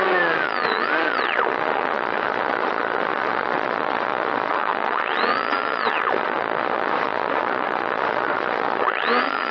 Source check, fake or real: fake